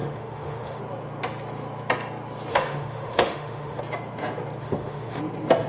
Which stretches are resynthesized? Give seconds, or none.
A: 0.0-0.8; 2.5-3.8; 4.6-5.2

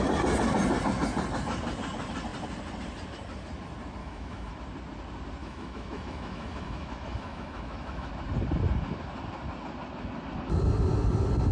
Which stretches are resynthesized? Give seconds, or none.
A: 4.0-4.5; 5.4-8.1

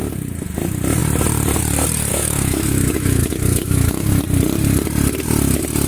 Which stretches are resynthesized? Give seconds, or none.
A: 2.1-4.2

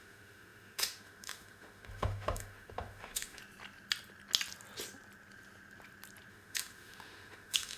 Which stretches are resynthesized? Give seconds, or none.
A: 0.0-3.4; 6.3-7.8

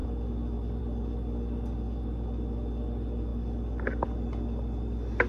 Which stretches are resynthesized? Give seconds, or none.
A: none